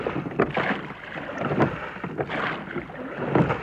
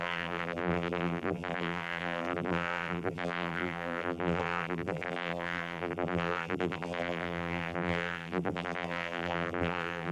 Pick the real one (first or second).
first